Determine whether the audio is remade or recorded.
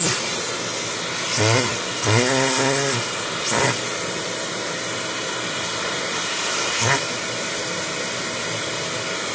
recorded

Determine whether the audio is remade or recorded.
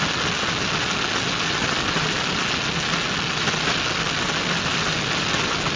recorded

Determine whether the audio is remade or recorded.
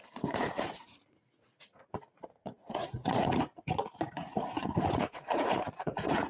remade